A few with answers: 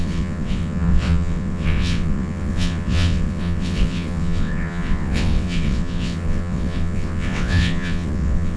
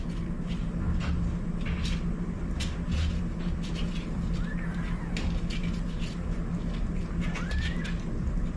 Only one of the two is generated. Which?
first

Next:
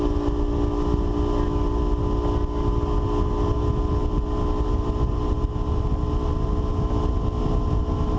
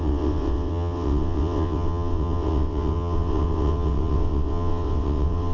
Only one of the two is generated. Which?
second